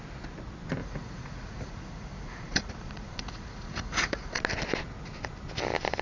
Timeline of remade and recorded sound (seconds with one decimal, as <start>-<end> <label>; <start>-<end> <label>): 0.0-0.8 recorded; 0.8-4.4 remade; 4.4-6.0 recorded